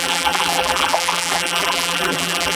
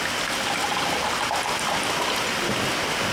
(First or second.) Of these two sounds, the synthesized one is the first